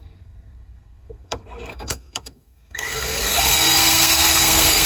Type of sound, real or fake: fake